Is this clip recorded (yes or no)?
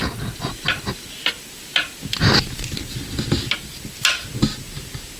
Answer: yes